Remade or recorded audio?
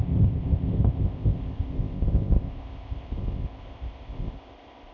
remade